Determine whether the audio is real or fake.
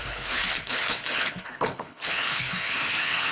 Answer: fake